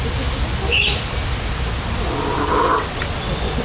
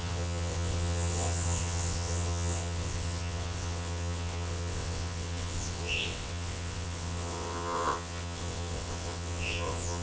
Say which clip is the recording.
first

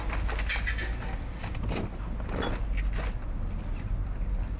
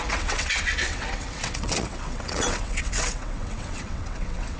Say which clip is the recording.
first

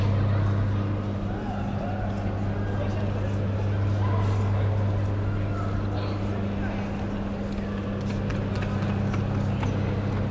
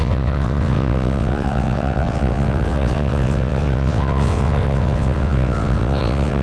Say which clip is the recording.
first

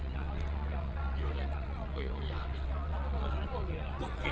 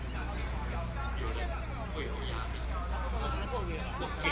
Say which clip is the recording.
second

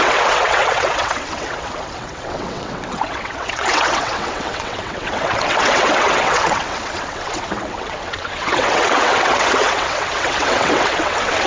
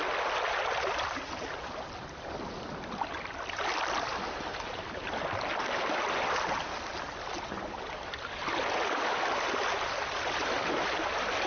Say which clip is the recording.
second